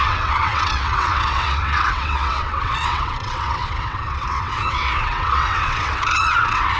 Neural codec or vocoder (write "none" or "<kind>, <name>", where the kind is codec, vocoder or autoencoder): vocoder, WaveNeXt